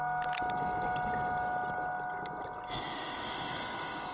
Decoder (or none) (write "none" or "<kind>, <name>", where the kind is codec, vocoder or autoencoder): none